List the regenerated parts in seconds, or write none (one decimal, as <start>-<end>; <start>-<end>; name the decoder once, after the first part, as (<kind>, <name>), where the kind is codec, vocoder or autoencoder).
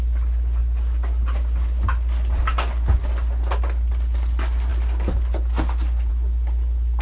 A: none